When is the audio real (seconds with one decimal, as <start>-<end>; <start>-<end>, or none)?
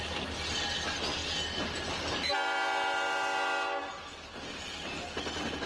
0.0-5.7